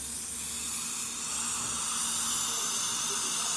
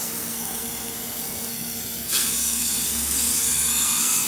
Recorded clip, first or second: first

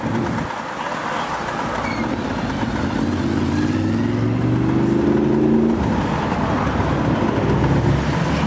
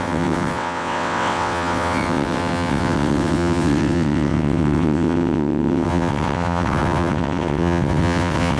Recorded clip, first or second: first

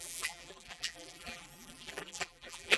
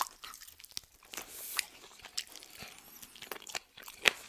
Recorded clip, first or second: second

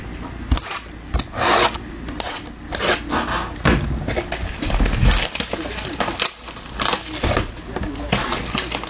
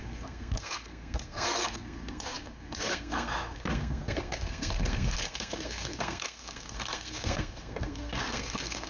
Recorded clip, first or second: first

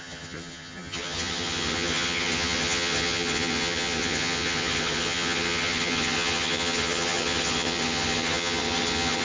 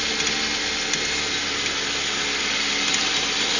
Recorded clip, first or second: second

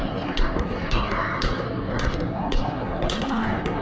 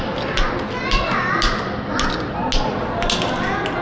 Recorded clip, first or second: second